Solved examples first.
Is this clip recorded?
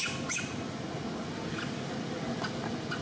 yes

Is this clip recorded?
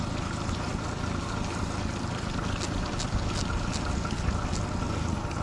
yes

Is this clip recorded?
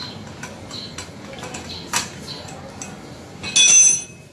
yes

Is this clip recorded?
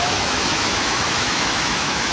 no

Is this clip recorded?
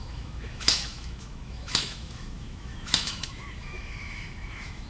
no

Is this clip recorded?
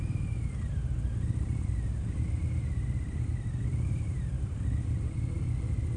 yes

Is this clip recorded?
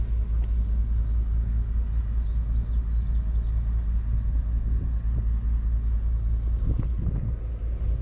yes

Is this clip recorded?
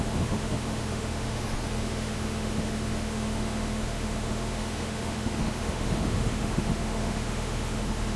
no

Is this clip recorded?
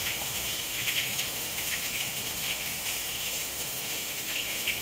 no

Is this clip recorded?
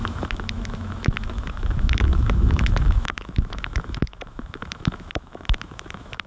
no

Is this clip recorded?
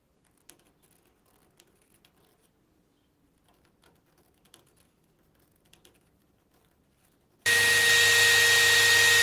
yes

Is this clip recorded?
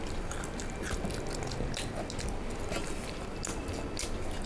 yes